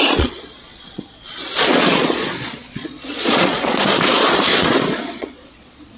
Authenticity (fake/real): fake